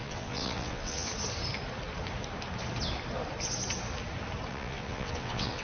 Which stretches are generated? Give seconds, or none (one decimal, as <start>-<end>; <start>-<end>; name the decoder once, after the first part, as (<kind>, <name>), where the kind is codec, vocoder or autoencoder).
0.0-1.1 (vocoder, WaveNeXt); 4.5-5.6